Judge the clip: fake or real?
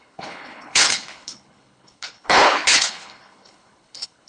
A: fake